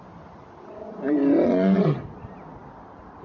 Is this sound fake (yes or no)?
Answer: no